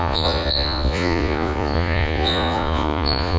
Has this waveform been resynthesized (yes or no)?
yes